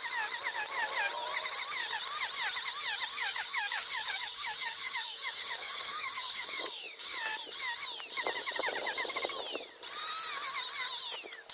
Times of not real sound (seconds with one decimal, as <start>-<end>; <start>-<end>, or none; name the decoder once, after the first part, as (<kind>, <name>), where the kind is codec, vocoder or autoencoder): 3.1-7.4 (codec, DAC)

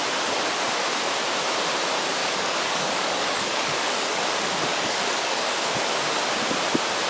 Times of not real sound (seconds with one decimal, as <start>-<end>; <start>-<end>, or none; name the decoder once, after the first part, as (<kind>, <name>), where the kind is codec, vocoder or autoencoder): 2.2-4.2 (codec, DAC); 4.7-5.5

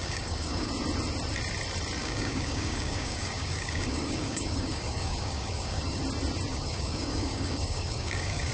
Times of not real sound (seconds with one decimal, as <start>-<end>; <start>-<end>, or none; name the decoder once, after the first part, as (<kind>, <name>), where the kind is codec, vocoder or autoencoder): 0.0-0.7 (codec, DAC); 2.0-6.0; 6.5-8.5

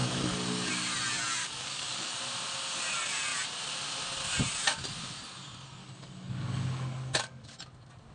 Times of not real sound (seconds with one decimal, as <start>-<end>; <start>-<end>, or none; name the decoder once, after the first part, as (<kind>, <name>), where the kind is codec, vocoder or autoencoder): 0.0-0.7 (codec, DAC); 1.4-2.2; 5.8-7.5

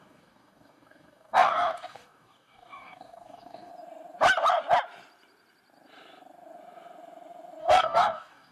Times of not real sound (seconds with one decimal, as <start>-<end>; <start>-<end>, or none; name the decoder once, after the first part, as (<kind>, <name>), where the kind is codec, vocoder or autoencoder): 0.0-3.7 (codec, DAC); 7.6-8.5